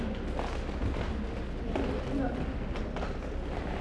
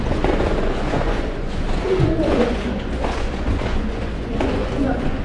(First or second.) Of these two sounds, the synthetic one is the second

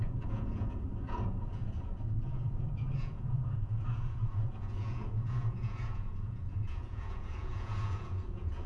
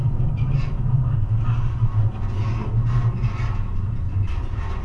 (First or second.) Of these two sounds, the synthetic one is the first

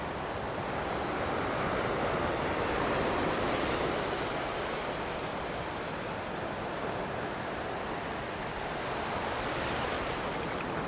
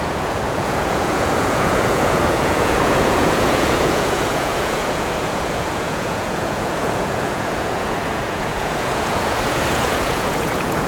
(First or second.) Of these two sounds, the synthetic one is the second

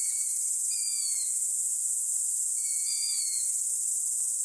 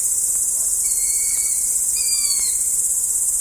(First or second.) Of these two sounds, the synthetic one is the first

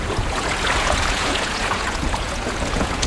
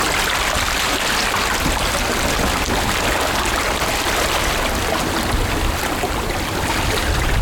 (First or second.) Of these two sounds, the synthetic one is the first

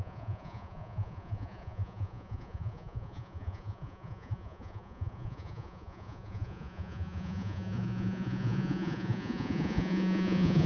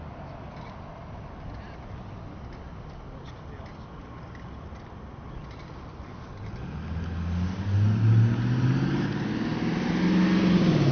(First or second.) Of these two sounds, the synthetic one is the first